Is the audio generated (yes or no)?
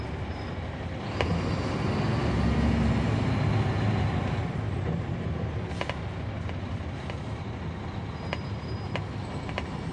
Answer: no